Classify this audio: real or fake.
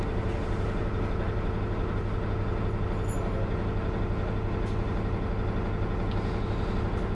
real